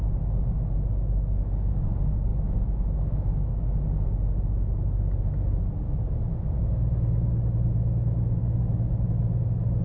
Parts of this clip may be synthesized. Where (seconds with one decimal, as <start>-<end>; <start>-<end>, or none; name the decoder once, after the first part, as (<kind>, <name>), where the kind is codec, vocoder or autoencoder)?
2.3-2.9 (autoencoder, DAC-VAE); 8.4-8.9